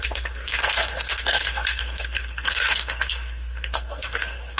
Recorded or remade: remade